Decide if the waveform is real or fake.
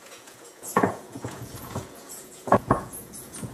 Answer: fake